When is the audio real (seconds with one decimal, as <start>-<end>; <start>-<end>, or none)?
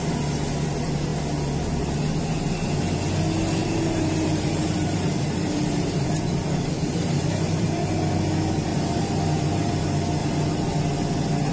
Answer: 0.0-3.6; 7.9-8.7; 9.7-10.2; 10.8-11.5